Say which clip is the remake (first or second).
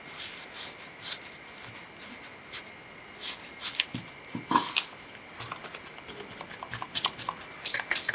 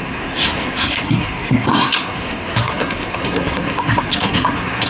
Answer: second